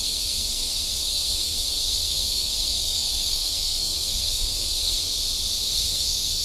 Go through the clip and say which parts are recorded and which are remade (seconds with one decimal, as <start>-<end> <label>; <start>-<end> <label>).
0.0-5.1 remade; 5.1-5.7 recorded; 5.7-6.4 remade